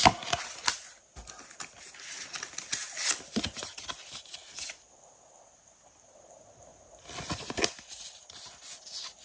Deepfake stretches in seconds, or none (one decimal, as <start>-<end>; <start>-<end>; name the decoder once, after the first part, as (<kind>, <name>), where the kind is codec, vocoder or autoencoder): none